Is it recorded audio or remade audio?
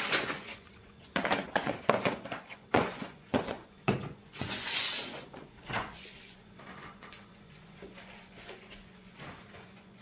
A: remade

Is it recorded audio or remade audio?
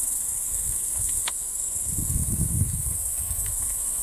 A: remade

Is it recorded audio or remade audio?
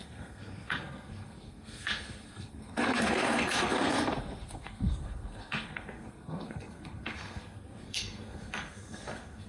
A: remade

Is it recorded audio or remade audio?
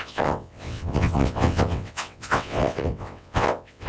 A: remade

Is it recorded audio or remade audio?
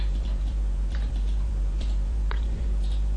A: remade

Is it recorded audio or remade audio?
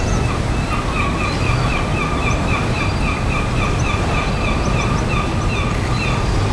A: recorded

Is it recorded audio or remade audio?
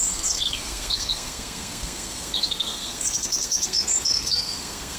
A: remade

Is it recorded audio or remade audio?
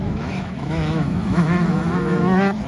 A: remade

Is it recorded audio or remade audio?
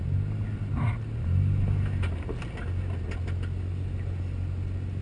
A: recorded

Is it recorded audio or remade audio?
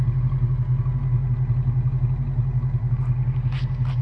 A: recorded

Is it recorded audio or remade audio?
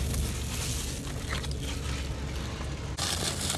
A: recorded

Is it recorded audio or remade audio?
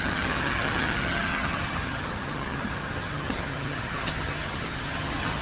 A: remade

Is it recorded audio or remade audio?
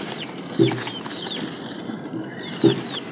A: remade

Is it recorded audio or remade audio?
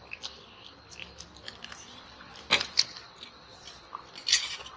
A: remade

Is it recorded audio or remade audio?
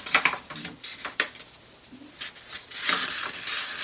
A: recorded